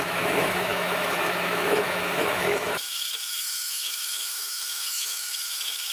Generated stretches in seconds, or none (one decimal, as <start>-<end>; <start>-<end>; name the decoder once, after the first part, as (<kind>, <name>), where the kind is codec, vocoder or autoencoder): 0.0-5.9 (autoencoder, DAC-VAE)